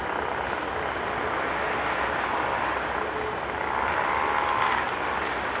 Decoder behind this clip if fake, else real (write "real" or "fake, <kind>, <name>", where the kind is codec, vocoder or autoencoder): real